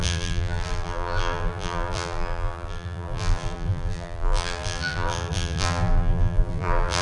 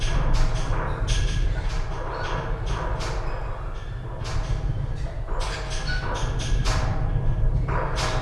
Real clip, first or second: second